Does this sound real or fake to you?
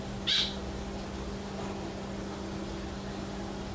fake